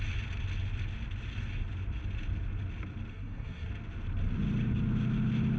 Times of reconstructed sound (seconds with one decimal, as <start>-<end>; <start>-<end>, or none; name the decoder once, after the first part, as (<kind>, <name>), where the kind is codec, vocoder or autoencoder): 3.1-3.7 (codec, SNAC)

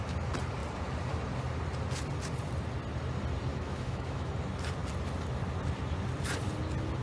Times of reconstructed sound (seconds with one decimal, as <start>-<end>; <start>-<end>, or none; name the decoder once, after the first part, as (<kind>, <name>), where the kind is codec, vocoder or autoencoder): 3.5-4.3 (autoencoder, DAC-VAE)

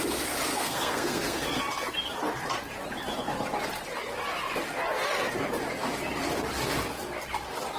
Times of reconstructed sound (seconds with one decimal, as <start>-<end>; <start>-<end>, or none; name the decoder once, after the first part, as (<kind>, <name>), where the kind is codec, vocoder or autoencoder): 0.5-1.6 (codec, SNAC)

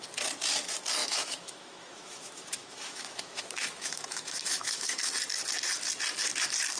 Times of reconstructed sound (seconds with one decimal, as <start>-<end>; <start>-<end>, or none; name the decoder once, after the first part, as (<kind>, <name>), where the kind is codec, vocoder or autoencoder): 1.0-5.1 (autoencoder, DAC-VAE)